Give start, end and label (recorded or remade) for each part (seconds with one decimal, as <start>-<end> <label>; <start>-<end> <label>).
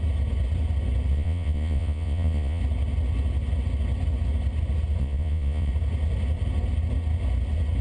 0.0-1.1 recorded; 1.1-2.6 remade; 2.6-5.0 recorded; 5.0-5.7 remade; 5.7-7.8 recorded